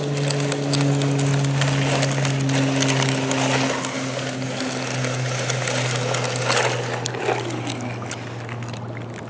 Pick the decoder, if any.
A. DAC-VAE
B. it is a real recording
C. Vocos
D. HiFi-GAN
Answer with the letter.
B